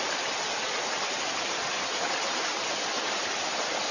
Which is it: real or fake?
real